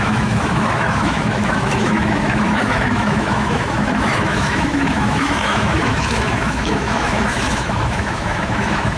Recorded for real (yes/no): no